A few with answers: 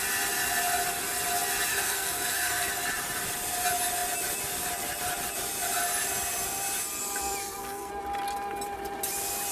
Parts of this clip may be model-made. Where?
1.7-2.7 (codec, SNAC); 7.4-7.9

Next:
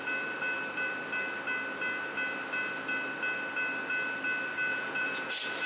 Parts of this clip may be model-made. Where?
4.7-5.3 (vocoder, Vocos)

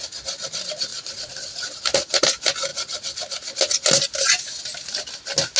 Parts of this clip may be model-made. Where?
0.9-1.8 (vocoder, Vocos)

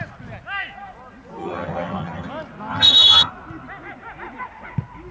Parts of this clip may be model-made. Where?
1.4-2.3 (vocoder, HiFi-GAN); 2.7-3.3

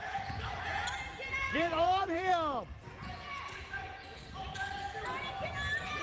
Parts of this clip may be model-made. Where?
0.0-0.8 (vocoder, Vocos); 1.3-2.3; 2.9-4.2

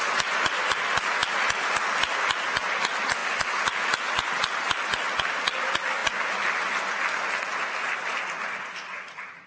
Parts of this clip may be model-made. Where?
none

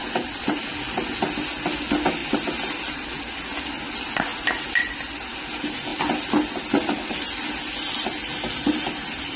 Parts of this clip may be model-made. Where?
none